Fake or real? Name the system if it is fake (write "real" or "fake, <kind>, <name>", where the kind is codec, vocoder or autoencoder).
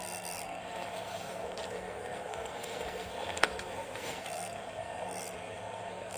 fake, codec, SNAC